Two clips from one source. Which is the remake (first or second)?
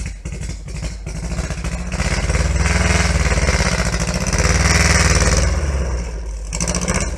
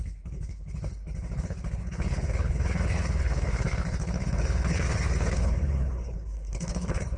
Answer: second